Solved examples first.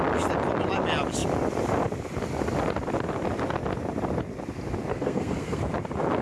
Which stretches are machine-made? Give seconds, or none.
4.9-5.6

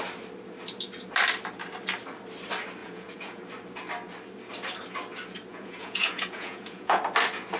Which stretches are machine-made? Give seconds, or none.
2.8-3.4; 5.5-7.0

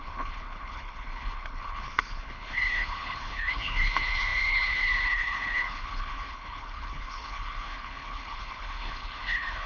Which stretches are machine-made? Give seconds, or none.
0.0-9.7

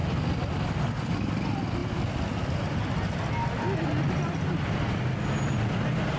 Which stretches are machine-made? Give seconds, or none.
none

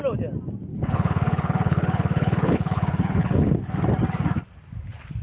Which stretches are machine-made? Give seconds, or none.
0.7-3.8

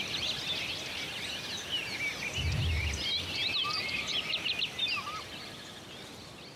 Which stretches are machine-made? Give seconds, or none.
none

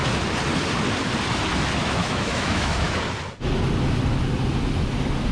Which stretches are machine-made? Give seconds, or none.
1.8-3.0